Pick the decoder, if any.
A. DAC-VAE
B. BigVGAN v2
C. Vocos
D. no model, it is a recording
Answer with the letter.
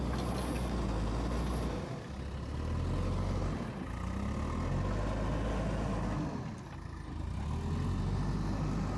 D